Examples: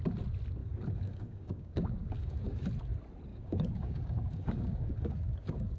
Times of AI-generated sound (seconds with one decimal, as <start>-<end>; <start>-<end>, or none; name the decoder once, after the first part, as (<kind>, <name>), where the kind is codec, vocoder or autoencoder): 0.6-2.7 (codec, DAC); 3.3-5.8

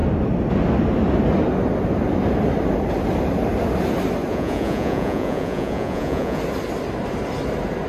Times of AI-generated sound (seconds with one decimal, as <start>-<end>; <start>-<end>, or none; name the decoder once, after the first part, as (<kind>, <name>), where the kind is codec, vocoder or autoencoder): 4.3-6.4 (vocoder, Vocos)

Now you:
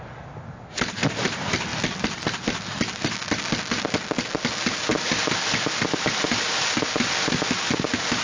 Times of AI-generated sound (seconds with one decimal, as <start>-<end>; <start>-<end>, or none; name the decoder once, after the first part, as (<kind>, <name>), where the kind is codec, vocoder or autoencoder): none